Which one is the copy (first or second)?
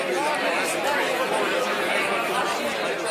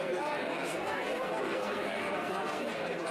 second